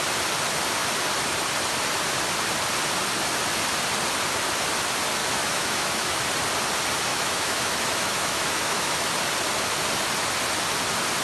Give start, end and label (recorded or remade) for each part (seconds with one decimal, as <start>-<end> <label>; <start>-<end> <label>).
0.0-5.2 recorded; 5.2-6.2 remade; 6.2-7.1 recorded; 7.1-9.1 remade; 9.1-11.2 recorded